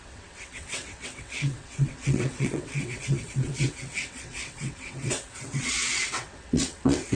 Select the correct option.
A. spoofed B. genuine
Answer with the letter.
A